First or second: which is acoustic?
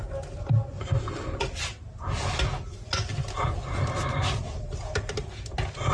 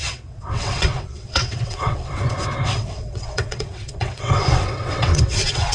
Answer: first